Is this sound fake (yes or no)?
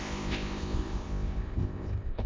yes